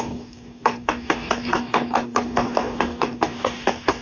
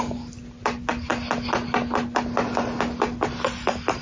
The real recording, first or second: second